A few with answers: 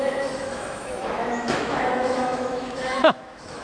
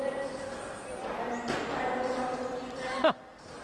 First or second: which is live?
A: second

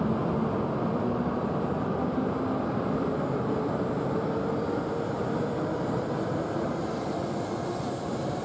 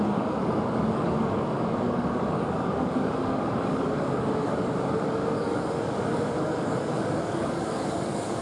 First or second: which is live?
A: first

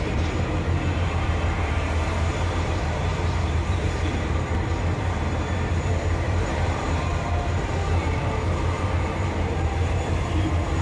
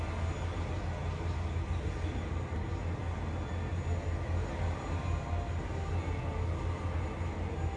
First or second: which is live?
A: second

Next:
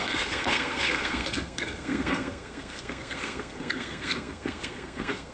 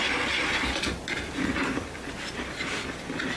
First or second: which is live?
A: second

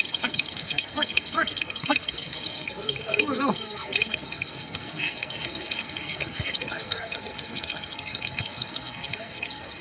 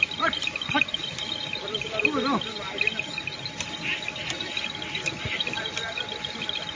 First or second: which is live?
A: second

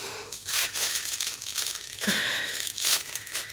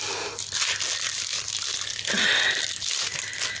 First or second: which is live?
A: second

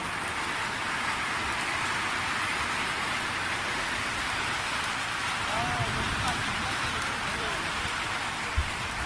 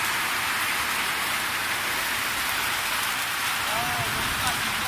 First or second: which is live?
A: second